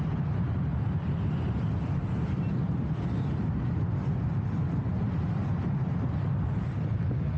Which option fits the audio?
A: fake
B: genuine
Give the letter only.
B